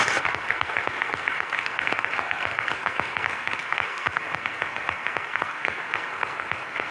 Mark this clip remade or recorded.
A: remade